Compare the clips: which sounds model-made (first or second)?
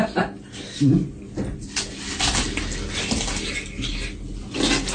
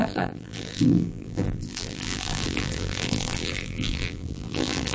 second